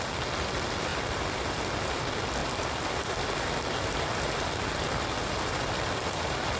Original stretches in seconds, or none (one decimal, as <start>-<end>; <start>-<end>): 0.0-0.9; 1.5-2.4